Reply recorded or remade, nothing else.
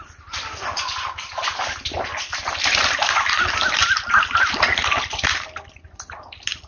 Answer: recorded